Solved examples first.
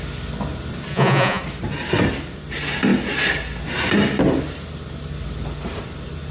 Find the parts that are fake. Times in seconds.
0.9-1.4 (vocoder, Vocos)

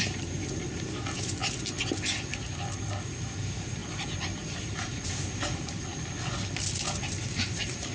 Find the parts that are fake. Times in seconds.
0.0-1.4 (vocoder, BigVGAN v2); 2.8-3.8; 4.6-5.9; 7.2-7.9

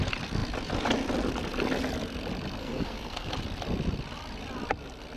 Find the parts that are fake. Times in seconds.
2.6-3.3 (codec, SNAC)